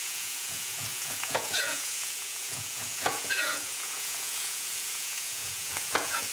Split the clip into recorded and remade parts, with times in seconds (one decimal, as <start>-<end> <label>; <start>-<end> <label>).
0.0-6.3 remade